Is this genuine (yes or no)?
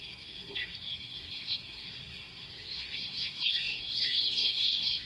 no